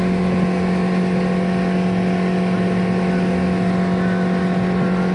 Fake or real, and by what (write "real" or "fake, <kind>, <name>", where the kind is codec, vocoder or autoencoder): real